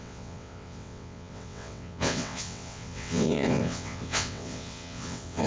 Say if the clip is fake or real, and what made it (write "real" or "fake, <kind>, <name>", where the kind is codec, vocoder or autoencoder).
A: fake, vocoder, WaveNeXt